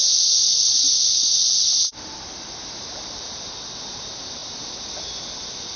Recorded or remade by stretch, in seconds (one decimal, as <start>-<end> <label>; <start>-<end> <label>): 0.0-0.5 recorded; 0.5-3.5 remade; 3.5-5.8 recorded